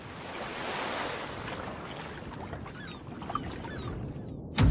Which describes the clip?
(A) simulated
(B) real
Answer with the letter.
B